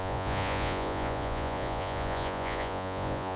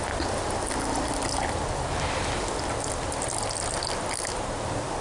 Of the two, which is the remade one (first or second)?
first